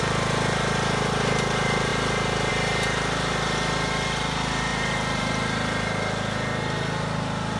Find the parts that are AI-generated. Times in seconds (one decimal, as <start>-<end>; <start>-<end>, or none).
none